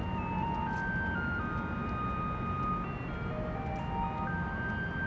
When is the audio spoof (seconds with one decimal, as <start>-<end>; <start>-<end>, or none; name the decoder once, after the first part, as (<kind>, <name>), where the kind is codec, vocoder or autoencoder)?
none